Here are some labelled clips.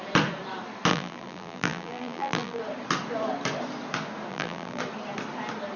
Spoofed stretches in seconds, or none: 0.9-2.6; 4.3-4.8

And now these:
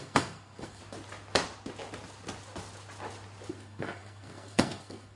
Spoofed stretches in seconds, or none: 0.0-0.8; 3.5-5.2

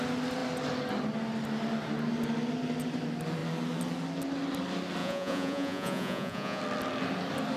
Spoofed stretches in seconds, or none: 5.0-6.6

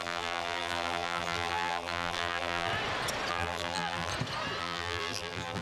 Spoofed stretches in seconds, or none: 0.0-2.7; 3.3-4.1; 4.6-5.6